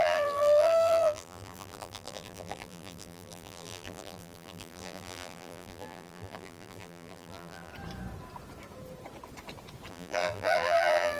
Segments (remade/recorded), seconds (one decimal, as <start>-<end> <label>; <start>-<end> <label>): 0.0-7.7 remade; 7.7-9.9 recorded; 9.9-11.2 remade